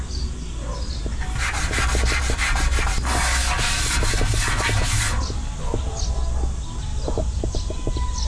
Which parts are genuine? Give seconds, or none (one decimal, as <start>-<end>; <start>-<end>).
0.0-8.3